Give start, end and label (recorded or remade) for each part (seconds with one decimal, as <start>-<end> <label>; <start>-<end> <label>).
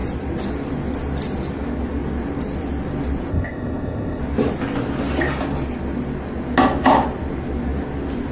0.0-3.3 recorded; 3.3-4.2 remade; 4.2-8.3 recorded